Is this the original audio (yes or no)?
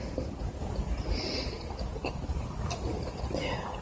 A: yes